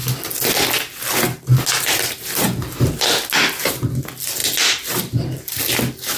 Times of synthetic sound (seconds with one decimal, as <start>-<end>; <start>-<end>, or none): none